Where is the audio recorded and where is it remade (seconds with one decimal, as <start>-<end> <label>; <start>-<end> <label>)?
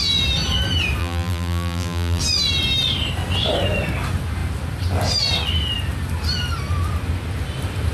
0.0-1.0 recorded; 1.0-2.2 remade; 2.2-7.9 recorded